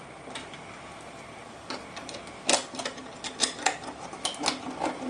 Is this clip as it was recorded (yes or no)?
yes